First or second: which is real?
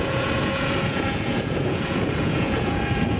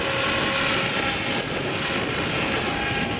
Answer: second